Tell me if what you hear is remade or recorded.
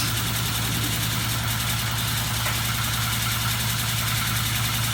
recorded